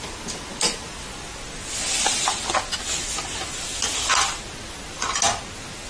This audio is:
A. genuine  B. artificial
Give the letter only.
A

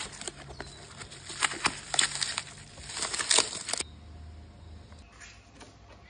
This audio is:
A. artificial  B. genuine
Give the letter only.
B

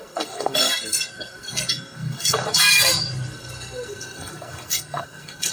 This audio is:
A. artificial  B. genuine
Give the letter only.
A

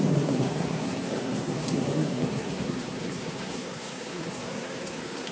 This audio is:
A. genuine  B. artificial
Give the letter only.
B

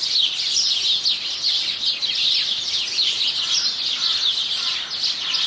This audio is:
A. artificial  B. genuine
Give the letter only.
B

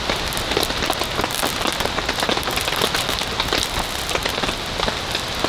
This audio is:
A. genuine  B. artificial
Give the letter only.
A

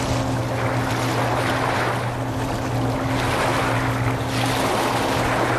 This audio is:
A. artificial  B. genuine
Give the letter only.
B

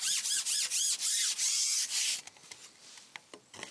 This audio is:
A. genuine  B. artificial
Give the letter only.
A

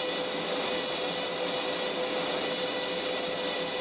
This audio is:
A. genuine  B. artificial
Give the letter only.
A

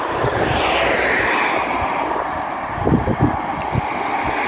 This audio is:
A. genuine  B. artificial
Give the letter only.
A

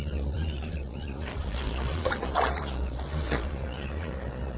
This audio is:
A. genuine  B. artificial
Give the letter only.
B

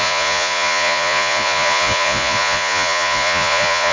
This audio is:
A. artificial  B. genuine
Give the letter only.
A